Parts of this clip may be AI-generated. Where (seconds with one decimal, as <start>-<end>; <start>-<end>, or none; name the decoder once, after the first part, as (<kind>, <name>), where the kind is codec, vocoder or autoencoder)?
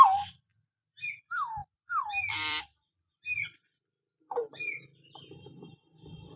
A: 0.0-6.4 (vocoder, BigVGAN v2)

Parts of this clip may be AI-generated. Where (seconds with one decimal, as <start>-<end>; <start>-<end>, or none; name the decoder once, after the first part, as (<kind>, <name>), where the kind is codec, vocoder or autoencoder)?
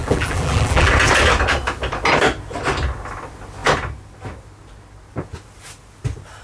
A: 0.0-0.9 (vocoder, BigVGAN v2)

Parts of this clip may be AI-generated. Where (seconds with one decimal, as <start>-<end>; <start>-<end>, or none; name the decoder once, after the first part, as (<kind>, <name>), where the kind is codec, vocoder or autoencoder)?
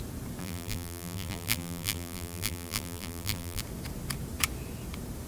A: 0.4-3.6 (vocoder, BigVGAN v2)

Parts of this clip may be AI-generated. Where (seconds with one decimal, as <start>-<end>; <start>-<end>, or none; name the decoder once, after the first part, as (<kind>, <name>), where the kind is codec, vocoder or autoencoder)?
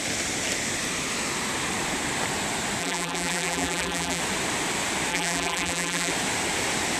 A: 2.8-4.2 (vocoder, BigVGAN v2); 5.1-6.1